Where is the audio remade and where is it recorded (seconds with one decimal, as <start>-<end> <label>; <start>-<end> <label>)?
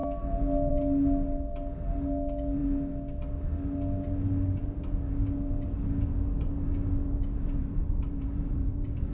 0.0-7.6 recorded; 7.6-9.1 remade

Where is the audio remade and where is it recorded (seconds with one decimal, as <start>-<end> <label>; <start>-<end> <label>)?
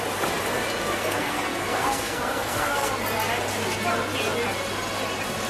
0.0-0.9 recorded; 0.9-2.9 remade; 2.9-5.5 recorded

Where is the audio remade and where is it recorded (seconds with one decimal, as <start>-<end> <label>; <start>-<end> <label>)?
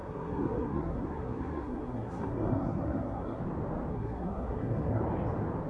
0.0-3.4 remade; 3.4-3.9 recorded; 3.9-5.0 remade; 5.0-5.7 recorded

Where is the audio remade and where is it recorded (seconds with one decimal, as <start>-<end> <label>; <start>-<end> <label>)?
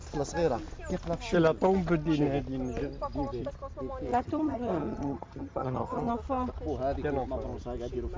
0.0-4.1 recorded; 4.1-6.1 remade; 6.1-8.2 recorded